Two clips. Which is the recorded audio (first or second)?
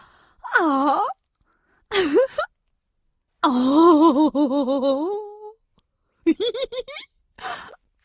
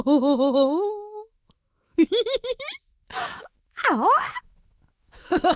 first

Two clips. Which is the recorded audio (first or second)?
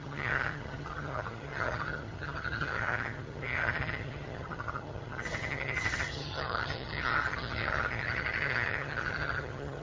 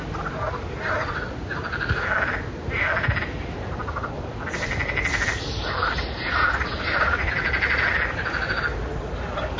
second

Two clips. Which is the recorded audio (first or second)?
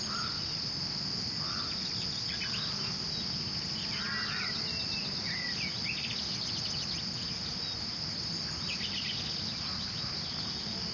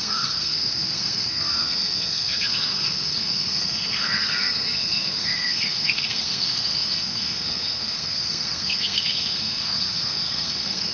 first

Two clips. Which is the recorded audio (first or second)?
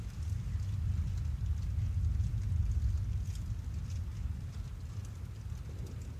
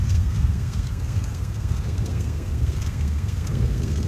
first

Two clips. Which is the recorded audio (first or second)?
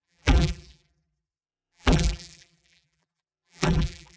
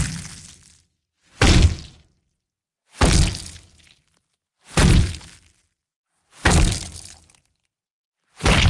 second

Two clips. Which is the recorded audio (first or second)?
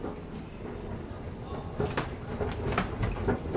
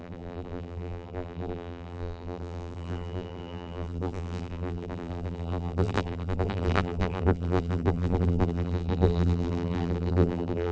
first